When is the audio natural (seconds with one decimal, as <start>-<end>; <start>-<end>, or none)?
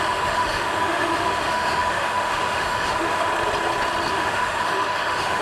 3.3-4.1